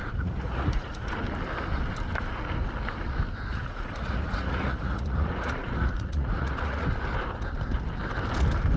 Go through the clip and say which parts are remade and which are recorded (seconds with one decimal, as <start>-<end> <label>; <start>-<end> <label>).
0.0-1.1 remade; 1.1-3.5 recorded; 3.5-7.0 remade; 7.0-8.8 recorded